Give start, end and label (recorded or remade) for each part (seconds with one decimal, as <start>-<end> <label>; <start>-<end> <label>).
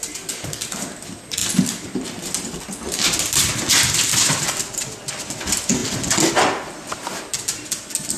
0.0-1.4 recorded; 1.4-2.6 remade; 2.6-8.2 recorded